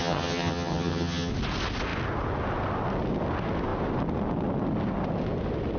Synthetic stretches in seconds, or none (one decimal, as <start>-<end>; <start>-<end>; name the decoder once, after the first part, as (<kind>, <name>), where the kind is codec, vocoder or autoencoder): 0.0-1.3 (vocoder, HiFi-GAN)